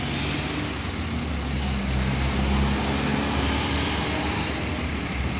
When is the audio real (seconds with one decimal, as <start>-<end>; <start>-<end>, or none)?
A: 0.0-5.4